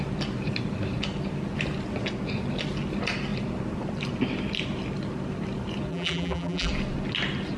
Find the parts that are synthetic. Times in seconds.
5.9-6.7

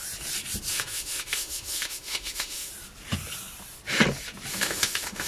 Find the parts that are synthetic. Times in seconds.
0.7-2.7; 4.5-5.3

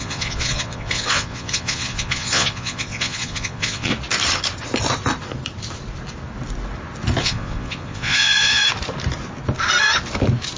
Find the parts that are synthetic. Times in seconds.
0.0-3.9; 7.2-8.6

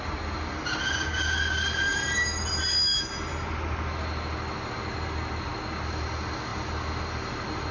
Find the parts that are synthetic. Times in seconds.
none